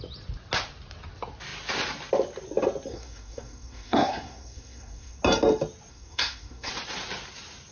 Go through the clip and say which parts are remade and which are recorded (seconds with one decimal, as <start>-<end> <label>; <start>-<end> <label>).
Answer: 0.0-2.9 recorded; 2.9-5.2 remade; 5.2-5.9 recorded; 5.9-6.7 remade; 6.7-7.7 recorded